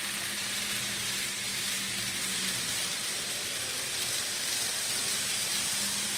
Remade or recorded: recorded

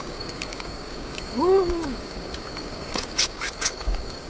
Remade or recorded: remade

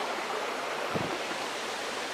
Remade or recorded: recorded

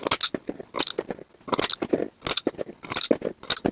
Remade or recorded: recorded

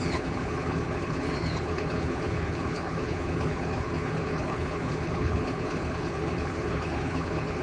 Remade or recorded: remade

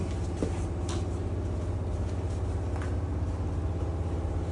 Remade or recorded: recorded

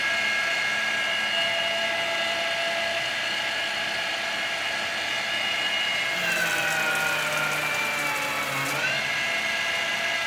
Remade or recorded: recorded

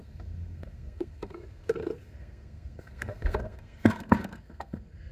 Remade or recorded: remade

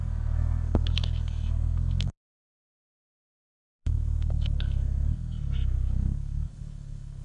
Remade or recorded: remade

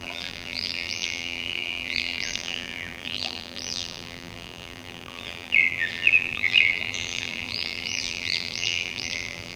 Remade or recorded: remade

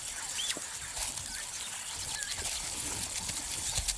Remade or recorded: recorded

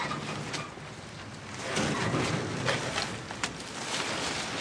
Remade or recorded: recorded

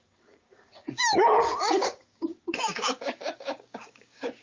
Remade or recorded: remade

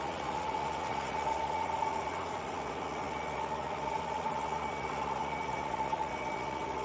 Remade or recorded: remade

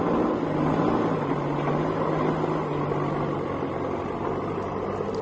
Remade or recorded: recorded